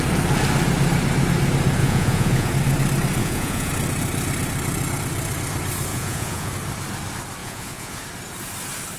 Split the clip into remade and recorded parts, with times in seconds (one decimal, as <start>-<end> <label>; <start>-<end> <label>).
0.0-1.8 recorded; 1.8-2.5 remade; 2.5-3.2 recorded; 3.2-3.7 remade; 3.7-5.9 recorded; 5.9-6.5 remade; 6.5-7.4 recorded; 7.4-8.0 remade; 8.0-9.0 recorded